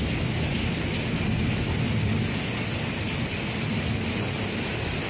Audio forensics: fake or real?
real